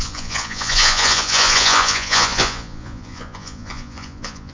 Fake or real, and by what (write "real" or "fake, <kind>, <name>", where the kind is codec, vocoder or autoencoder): fake, vocoder, Vocos